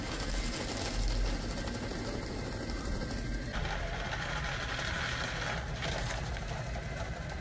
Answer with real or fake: real